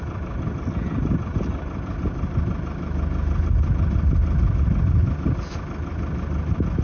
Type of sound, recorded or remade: recorded